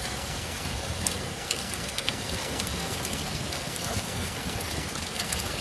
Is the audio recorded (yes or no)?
no